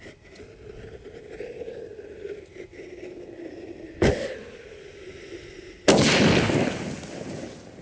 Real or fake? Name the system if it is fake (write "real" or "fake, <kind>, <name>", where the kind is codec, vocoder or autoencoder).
real